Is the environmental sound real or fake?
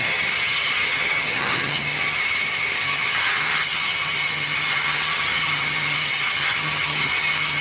fake